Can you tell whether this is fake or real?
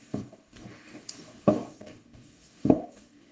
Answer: fake